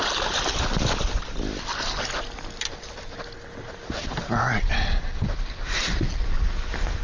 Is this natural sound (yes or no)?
yes